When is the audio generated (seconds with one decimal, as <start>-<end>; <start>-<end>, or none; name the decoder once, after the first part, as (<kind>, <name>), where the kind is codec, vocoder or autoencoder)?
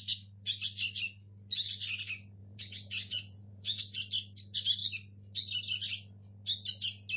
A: 2.4-3.8 (vocoder, Vocos)